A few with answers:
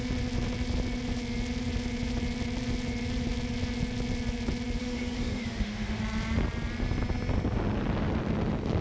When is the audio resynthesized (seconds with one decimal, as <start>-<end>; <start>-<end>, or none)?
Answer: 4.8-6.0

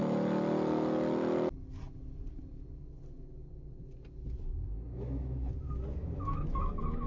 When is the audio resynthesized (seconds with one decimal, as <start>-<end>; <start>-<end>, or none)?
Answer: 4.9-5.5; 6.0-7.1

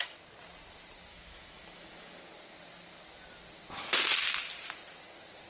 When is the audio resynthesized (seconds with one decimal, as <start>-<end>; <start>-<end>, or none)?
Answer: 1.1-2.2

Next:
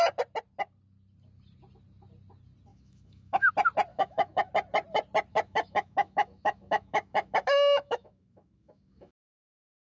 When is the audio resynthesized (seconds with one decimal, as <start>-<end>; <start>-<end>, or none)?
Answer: 2.7-3.5; 3.9-4.5; 5.3-9.1

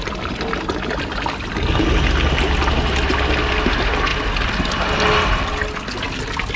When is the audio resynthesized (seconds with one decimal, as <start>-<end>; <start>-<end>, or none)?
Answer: none

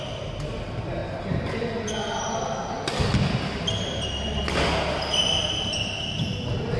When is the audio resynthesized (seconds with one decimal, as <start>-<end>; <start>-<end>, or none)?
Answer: none

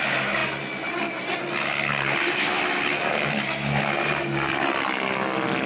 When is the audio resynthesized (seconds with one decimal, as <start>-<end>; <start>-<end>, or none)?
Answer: none

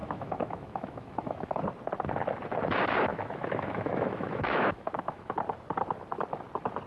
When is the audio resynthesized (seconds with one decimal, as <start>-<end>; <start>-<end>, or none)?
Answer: 0.0-1.6; 3.1-5.4